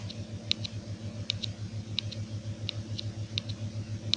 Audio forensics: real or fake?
real